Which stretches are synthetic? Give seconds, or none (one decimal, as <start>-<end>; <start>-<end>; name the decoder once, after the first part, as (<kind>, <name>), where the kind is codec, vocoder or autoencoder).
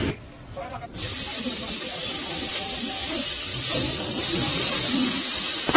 0.7-3.5 (vocoder, BigVGAN v2); 4.1-5.8